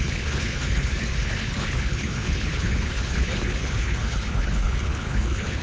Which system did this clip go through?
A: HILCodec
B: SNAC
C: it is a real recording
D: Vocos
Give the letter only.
A